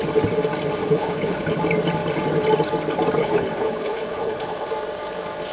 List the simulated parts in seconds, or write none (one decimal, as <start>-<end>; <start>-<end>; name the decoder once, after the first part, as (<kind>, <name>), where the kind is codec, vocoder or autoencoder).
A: 0.8-1.6 (codec, HILCodec); 3.2-4.7